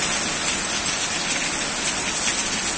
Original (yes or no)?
yes